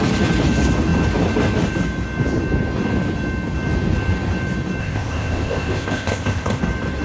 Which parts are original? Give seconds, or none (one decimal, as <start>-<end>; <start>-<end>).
0.0-4.8; 6.6-7.0